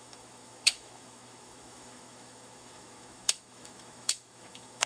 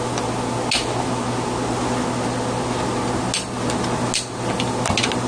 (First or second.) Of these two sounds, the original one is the second